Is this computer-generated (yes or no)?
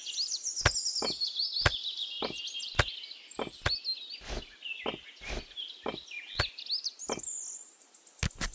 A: no